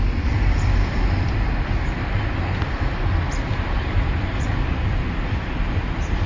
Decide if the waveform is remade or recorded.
remade